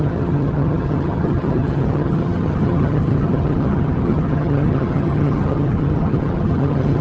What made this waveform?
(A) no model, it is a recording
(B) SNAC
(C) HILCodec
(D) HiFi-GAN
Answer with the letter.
D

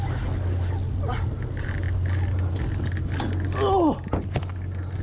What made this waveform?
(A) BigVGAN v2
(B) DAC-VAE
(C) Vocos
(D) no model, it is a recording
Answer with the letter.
D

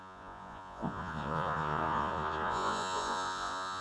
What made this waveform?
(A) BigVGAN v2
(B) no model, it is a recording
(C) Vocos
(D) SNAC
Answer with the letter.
C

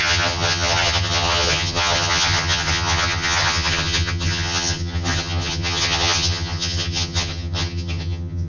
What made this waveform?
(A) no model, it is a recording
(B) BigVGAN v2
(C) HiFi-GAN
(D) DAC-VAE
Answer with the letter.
C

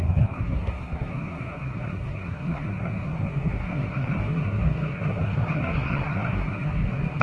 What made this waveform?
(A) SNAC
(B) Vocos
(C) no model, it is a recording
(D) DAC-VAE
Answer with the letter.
A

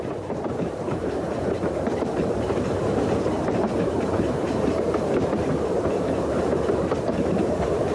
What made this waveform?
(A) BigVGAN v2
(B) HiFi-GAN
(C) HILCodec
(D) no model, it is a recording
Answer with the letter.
A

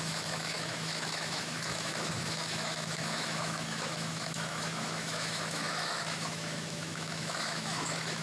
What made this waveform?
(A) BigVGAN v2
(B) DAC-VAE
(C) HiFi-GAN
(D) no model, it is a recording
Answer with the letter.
B